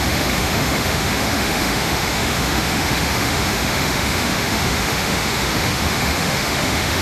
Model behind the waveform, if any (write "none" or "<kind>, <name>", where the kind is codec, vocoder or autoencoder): autoencoder, DAC-VAE